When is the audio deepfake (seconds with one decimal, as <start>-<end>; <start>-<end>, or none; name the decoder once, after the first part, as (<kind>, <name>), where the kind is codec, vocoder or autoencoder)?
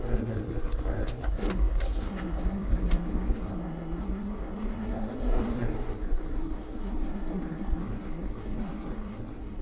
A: 0.0-9.6 (codec, SNAC)